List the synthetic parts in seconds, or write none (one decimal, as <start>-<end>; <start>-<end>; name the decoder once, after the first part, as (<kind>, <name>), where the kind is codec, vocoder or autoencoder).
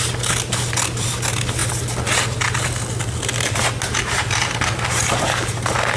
none